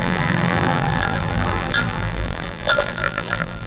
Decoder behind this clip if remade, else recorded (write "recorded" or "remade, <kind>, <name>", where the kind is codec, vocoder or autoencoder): remade, vocoder, BigVGAN v2